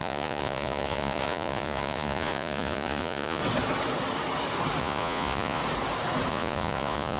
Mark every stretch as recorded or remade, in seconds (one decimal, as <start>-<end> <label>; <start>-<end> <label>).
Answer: 0.0-3.4 remade; 3.4-4.8 recorded; 4.8-5.6 remade; 5.6-6.3 recorded; 6.3-7.2 remade